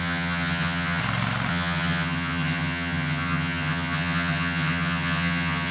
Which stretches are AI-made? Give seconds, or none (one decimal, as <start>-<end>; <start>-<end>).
0.0-1.0; 1.5-5.7